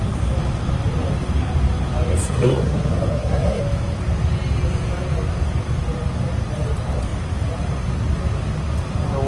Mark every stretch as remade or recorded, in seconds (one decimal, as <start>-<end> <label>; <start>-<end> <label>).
0.0-2.2 recorded; 2.2-3.6 remade; 3.6-9.3 recorded